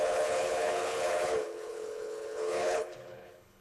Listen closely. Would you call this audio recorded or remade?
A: remade